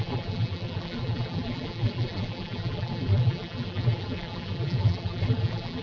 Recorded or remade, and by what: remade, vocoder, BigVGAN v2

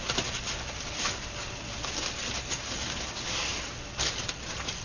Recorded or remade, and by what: recorded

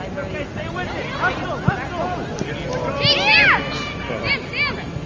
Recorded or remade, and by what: recorded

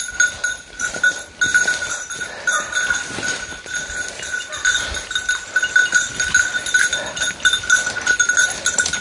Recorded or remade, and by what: recorded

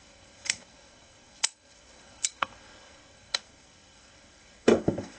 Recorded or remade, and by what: remade, codec, SNAC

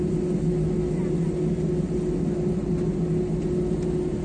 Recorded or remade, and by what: recorded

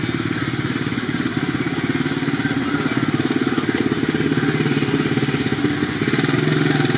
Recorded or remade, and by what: recorded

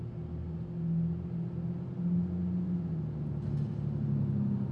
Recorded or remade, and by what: recorded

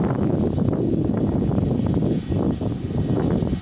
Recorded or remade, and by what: recorded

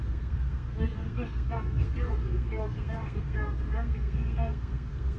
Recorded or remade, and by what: remade, codec, SNAC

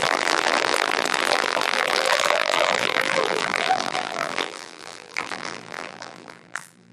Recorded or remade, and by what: remade, vocoder, BigVGAN v2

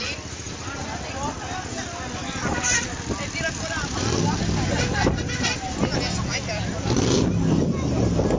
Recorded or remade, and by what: recorded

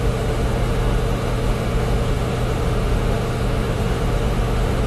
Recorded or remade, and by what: remade, autoencoder, DAC-VAE